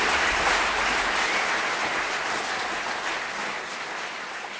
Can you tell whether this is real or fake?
real